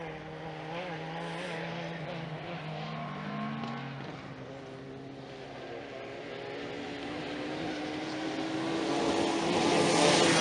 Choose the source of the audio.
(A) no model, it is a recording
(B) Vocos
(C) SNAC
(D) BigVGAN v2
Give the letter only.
A